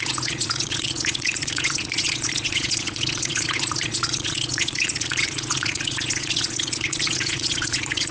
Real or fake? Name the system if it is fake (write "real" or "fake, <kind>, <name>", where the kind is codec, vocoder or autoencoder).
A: fake, vocoder, Vocos